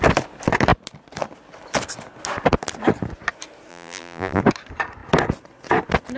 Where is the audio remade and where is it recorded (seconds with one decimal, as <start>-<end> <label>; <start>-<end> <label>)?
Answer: 0.0-3.7 recorded; 3.7-4.4 remade; 4.4-6.2 recorded